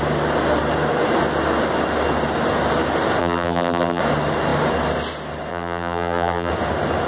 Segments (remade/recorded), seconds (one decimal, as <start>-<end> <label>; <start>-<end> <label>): 0.0-3.2 recorded; 3.2-4.0 remade; 4.0-5.5 recorded; 5.5-6.5 remade; 6.5-7.1 recorded